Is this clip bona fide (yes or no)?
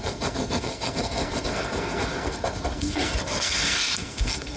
no